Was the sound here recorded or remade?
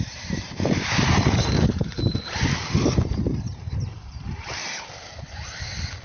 remade